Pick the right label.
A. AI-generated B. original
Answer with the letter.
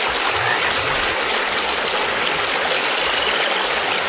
B